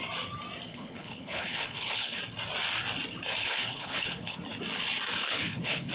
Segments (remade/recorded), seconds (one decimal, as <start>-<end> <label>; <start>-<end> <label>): 0.0-0.7 recorded; 0.7-2.2 remade; 2.2-3.4 recorded; 3.4-4.4 remade; 4.4-5.2 recorded; 5.2-5.9 remade

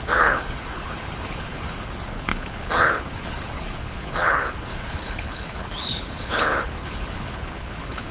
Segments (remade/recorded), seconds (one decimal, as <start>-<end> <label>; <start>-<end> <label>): 0.0-8.1 remade

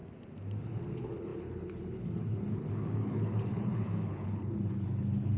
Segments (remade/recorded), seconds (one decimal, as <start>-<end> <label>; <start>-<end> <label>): 0.0-0.6 recorded; 0.6-5.4 remade

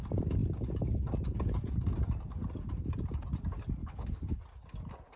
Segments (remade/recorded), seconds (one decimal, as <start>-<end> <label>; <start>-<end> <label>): 0.0-3.8 recorded; 3.8-4.4 remade; 4.4-5.2 recorded

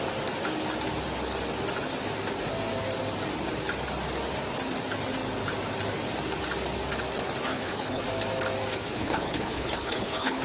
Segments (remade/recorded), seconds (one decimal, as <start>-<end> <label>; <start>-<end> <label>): 0.0-7.5 recorded; 7.5-8.0 remade; 8.0-8.7 recorded; 8.7-10.4 remade